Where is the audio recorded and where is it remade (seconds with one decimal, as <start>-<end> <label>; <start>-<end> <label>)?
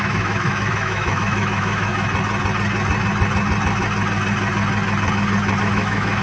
0.0-1.9 remade; 1.9-5.6 recorded; 5.6-6.2 remade